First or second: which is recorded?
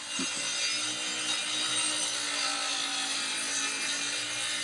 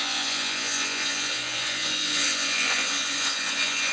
first